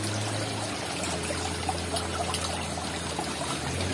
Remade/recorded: recorded